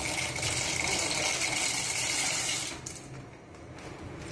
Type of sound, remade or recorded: recorded